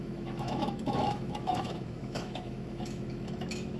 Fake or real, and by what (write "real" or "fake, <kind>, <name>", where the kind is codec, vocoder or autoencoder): fake, autoencoder, DAC-VAE